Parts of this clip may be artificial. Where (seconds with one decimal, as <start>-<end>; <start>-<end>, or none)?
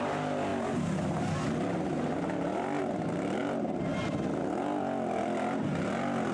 none